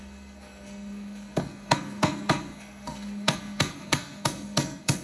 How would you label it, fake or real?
fake